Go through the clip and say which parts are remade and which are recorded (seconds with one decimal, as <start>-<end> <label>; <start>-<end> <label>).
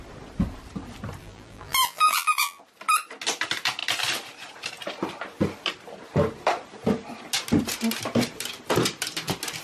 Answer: 0.0-1.2 recorded; 1.2-2.6 remade; 2.6-9.6 recorded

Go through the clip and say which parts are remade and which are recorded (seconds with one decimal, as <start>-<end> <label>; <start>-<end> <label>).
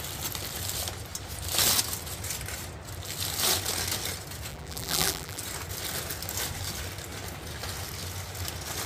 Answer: 0.0-4.5 recorded; 4.5-5.4 remade; 5.4-8.9 recorded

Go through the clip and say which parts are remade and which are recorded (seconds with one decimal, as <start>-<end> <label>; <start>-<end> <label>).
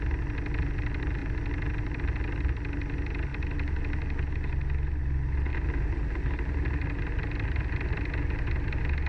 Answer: 0.0-1.2 recorded; 1.2-2.0 remade; 2.0-9.1 recorded